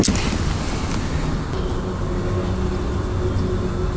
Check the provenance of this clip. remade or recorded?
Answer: recorded